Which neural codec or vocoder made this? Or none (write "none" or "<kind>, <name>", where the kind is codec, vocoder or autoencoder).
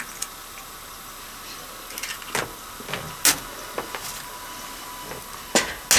none